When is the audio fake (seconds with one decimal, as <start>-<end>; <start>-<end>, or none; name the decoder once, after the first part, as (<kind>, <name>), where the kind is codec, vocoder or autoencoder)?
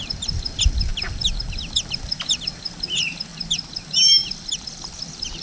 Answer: none